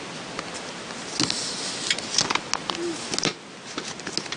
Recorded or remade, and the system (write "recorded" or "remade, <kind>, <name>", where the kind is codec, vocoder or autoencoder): recorded